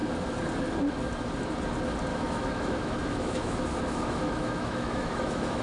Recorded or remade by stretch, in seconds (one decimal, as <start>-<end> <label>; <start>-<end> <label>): 0.0-2.1 recorded; 2.1-5.6 remade